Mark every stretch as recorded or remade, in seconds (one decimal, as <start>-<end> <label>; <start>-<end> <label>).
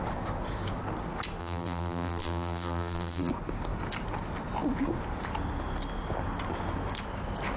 0.0-1.4 recorded; 1.4-3.3 remade; 3.3-7.6 recorded